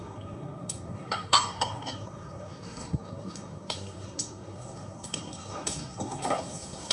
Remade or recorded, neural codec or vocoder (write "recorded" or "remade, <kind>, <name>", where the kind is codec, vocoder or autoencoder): remade, codec, SNAC